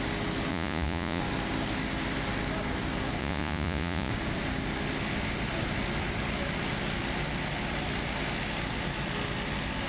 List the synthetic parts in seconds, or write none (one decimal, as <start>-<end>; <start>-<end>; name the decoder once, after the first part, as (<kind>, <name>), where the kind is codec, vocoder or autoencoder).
0.5-1.2 (vocoder, Vocos); 3.2-4.1